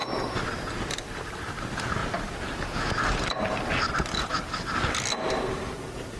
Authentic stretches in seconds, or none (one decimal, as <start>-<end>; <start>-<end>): 0.0-0.9; 4.3-5.3